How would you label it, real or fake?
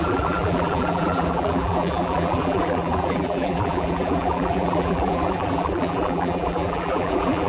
fake